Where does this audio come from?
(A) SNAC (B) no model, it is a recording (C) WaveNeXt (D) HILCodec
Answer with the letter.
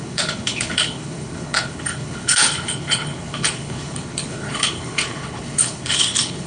D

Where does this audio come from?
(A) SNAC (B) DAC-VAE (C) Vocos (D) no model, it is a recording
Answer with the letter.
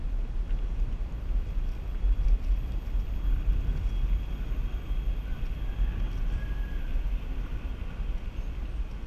D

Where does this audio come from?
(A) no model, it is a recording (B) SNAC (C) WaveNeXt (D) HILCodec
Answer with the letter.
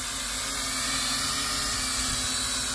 A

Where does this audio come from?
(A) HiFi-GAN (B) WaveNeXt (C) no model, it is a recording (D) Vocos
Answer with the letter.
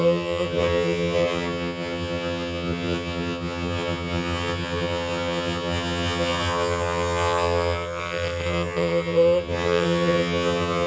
A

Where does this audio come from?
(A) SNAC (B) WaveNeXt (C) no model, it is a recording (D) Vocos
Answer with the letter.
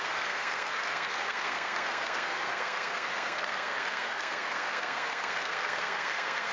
A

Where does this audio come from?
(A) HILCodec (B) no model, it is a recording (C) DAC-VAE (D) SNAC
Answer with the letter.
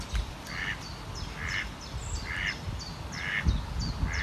B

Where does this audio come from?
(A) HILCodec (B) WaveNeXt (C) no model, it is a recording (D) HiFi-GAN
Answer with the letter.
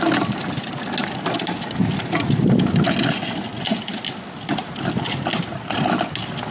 C